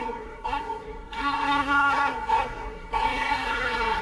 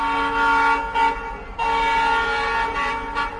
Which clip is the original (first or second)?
second